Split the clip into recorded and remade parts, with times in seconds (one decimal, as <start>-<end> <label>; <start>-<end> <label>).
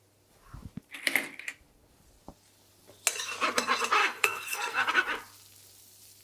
0.0-4.0 recorded; 4.0-4.9 remade; 4.9-6.2 recorded